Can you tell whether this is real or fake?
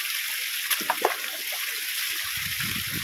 real